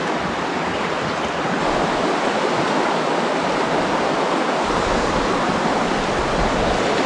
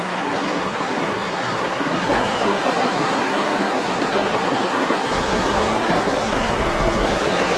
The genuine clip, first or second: first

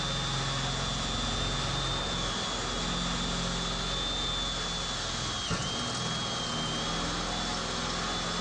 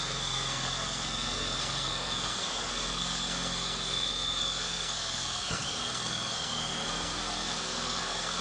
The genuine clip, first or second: first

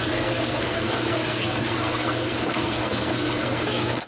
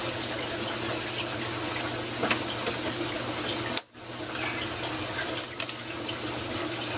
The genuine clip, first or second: second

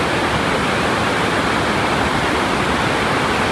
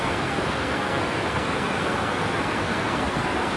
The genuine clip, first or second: first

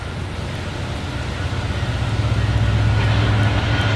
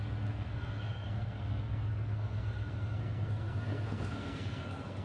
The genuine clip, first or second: first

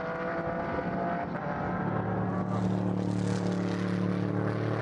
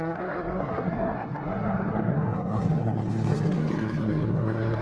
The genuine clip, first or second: first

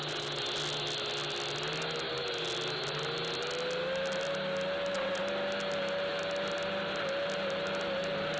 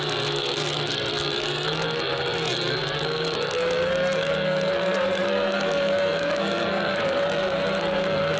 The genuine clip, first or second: first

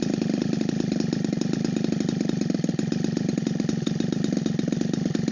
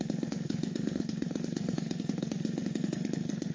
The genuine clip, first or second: first